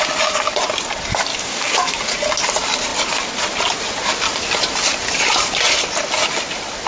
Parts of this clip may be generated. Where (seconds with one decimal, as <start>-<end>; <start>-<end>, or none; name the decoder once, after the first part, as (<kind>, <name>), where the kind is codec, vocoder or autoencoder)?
1.3-1.9 (codec, DAC)